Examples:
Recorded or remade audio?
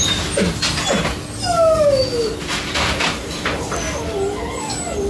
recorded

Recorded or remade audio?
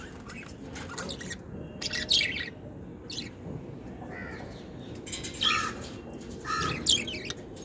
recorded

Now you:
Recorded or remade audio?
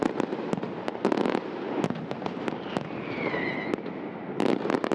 recorded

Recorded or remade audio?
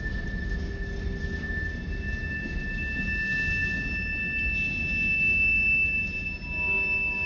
recorded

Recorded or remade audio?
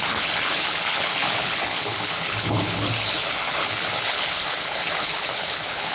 remade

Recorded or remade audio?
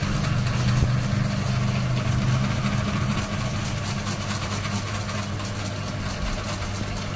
recorded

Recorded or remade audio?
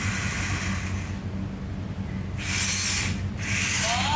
recorded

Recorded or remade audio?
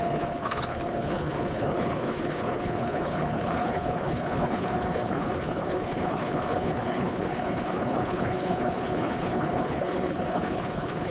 remade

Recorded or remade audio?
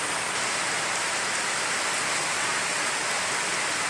recorded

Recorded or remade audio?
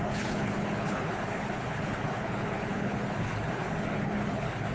remade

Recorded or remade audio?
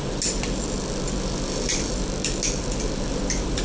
recorded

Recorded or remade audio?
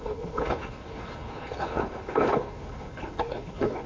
remade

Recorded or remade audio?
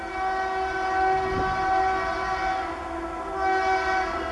recorded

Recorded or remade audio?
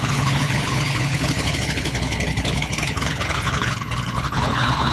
remade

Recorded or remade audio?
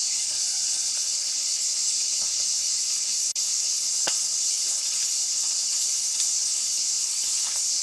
remade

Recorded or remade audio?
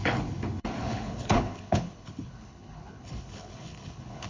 remade